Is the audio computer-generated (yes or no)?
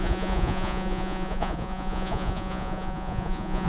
yes